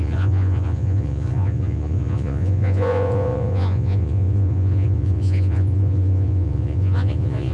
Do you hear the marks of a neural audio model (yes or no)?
yes